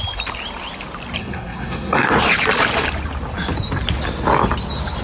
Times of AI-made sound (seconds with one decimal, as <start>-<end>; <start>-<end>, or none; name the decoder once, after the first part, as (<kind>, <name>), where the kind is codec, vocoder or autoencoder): 1.2-2.1 (codec, SNAC)